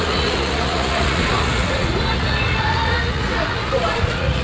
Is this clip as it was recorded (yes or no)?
no